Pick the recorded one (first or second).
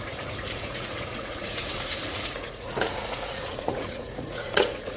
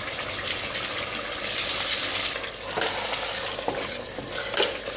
second